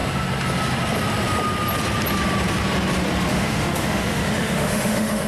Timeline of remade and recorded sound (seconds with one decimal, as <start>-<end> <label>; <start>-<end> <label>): 0.0-3.3 recorded; 3.3-5.3 remade